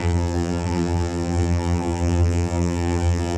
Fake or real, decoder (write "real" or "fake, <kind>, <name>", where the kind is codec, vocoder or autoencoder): fake, vocoder, BigVGAN v2